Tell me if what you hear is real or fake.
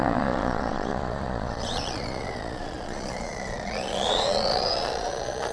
fake